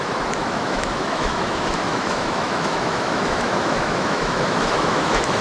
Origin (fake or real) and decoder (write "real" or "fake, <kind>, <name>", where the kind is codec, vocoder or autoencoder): fake, autoencoder, DAC-VAE